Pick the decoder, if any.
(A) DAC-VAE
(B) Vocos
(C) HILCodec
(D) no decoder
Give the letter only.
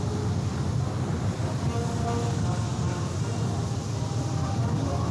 D